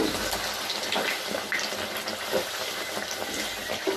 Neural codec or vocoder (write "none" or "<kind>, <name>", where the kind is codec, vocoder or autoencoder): none